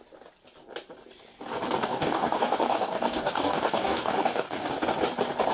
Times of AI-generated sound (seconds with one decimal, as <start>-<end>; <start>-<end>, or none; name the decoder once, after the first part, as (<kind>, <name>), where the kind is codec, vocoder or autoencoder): 1.8-4.7 (codec, DAC)